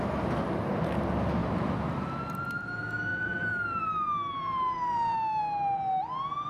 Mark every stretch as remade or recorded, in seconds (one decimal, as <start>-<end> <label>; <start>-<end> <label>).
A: 0.0-1.4 recorded; 1.4-2.1 remade; 2.1-3.1 recorded; 3.1-5.4 remade; 5.4-6.5 recorded